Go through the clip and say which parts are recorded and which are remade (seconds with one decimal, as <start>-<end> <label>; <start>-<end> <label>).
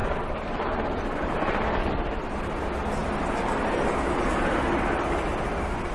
0.0-2.6 remade; 2.6-5.9 recorded